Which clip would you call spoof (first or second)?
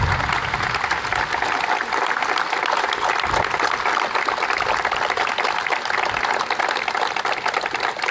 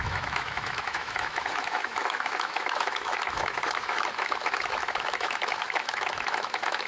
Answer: second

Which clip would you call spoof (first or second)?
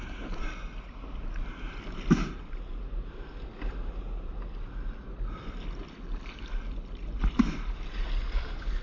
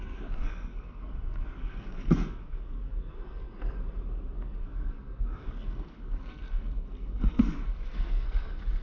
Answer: second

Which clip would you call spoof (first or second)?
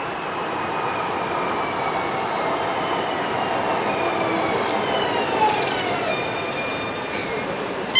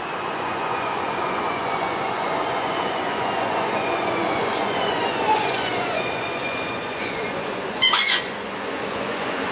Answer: second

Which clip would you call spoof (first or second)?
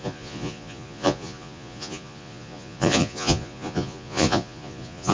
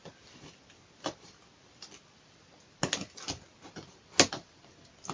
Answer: first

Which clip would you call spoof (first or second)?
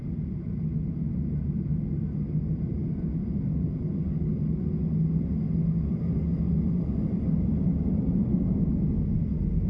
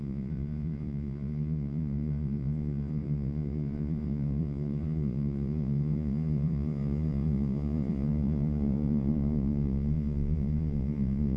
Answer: second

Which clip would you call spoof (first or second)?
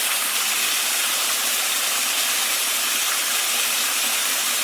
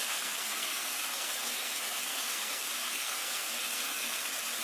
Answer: second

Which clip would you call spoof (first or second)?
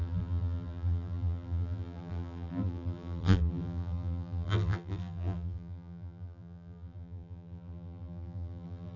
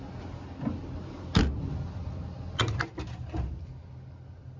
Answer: first